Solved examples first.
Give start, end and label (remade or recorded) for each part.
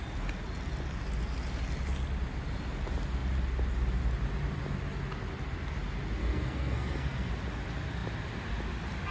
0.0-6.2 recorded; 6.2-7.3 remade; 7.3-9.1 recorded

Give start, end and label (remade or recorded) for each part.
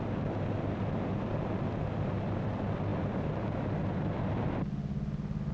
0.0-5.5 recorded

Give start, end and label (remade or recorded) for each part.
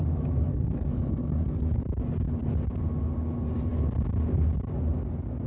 0.0-0.5 recorded; 0.5-1.8 remade; 1.8-5.5 recorded